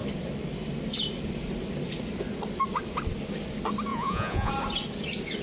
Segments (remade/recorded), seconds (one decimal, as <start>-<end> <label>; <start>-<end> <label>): 0.0-3.9 recorded; 3.9-4.5 remade; 4.5-5.4 recorded